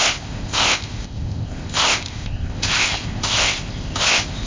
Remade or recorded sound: remade